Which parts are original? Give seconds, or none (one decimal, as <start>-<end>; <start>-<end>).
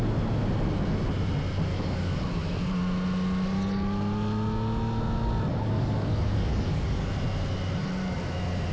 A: 0.0-1.7; 2.2-5.5; 7.1-8.7